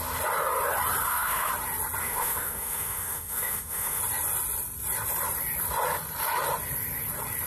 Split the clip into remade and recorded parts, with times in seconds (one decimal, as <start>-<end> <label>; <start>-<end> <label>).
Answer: 0.0-1.0 recorded; 1.0-1.5 remade; 1.5-2.0 recorded; 2.0-4.0 remade; 4.0-7.5 recorded